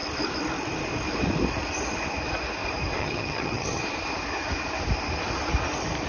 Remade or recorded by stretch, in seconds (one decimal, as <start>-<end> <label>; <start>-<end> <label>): 0.0-3.0 recorded; 3.0-3.8 remade; 3.8-6.1 recorded